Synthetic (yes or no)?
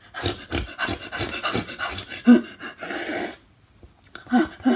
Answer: no